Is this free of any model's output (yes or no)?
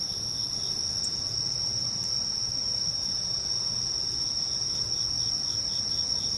yes